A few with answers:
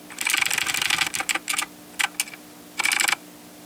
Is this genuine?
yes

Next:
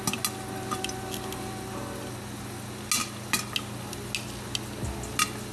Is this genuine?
yes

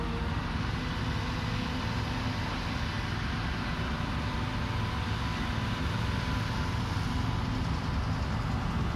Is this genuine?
yes